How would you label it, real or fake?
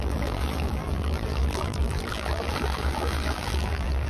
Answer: fake